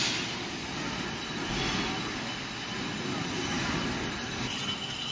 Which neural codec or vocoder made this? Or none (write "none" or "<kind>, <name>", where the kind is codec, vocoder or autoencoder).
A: none